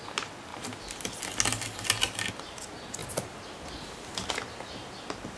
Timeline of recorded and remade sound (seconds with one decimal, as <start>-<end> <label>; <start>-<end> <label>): 0.0-5.4 recorded